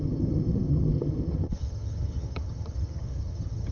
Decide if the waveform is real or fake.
fake